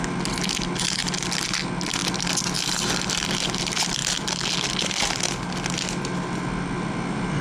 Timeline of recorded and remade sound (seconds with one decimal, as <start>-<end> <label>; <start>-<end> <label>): 0.0-7.4 recorded